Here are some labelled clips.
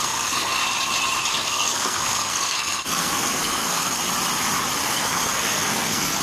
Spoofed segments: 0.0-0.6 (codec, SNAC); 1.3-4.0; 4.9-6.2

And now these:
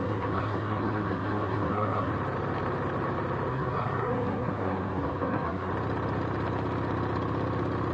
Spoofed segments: 0.0-2.1 (codec, SNAC); 3.5-5.7

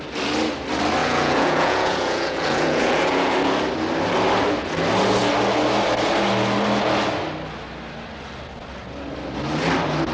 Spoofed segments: 1.0-3.3 (vocoder, Vocos)

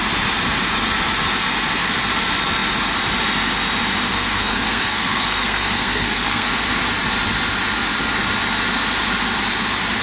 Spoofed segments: 4.1-6.5 (codec, SNAC)

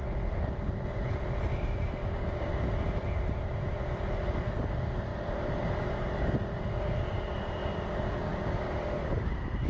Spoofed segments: 2.0-2.5 (codec, DAC)

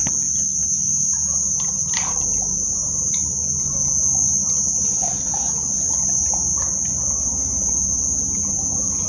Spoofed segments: none

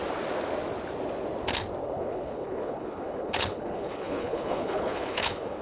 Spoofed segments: 1.8-5.6 (codec, HILCodec)